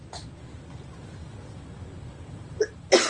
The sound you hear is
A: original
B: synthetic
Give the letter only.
A